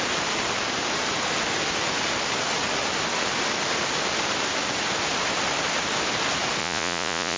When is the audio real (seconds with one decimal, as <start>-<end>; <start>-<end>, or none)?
0.0-6.6